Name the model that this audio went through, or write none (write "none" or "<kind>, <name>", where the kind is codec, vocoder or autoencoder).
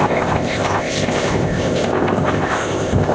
codec, ZipCodec